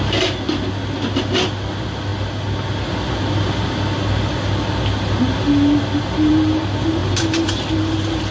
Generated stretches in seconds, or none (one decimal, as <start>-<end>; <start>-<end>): 7.0-7.5